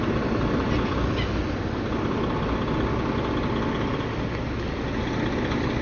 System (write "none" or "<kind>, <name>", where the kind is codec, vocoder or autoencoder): none